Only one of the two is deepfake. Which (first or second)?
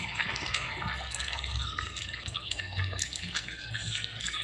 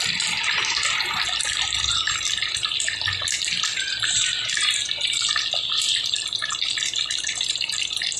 first